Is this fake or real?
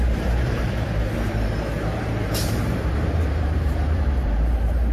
fake